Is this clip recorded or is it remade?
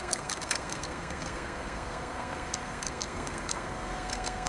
remade